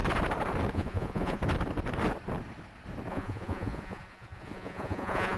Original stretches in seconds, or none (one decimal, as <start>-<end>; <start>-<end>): 0.0-0.7; 1.4-3.1